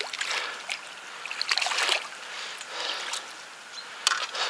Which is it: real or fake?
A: real